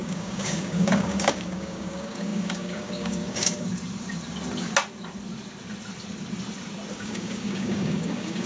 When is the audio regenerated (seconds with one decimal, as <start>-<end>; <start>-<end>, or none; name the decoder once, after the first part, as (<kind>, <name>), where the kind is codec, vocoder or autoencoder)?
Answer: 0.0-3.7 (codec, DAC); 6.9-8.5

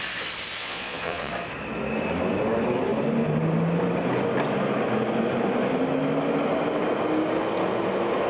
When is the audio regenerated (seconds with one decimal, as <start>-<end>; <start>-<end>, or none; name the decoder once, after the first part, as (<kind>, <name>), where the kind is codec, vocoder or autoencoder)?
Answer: 0.6-1.3 (vocoder, Vocos)

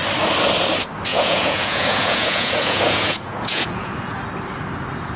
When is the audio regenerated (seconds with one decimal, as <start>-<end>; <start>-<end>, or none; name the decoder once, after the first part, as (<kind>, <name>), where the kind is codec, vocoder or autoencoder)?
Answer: 1.1-4.2 (vocoder, Vocos)

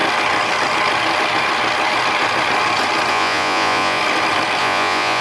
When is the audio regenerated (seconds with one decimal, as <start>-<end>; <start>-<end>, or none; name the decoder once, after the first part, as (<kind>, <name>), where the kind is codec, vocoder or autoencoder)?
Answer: 3.1-4.0 (vocoder, Vocos); 4.6-5.2